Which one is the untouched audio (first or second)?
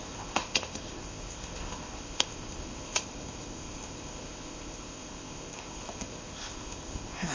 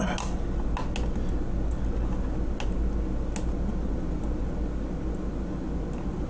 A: second